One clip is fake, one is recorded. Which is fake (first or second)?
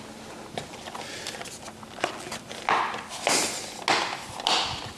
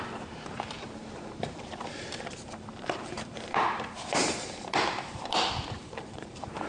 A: second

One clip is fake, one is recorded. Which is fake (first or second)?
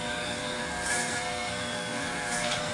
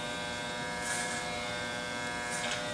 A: first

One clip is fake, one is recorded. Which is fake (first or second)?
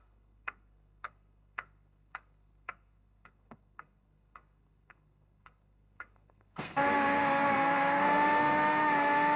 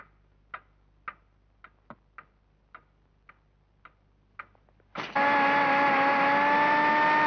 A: first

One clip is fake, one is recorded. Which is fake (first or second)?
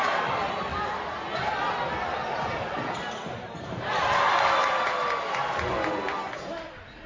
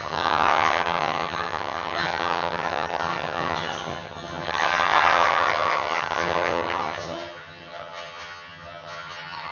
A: second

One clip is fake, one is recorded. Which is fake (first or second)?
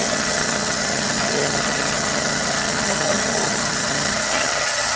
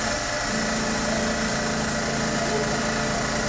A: first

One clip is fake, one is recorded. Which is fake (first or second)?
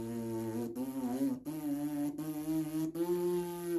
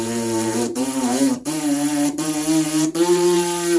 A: second